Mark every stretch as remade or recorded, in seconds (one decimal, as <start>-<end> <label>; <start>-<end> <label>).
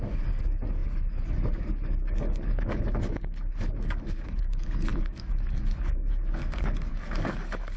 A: 0.0-7.8 remade